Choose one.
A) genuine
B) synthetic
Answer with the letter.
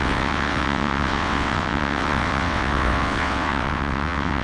B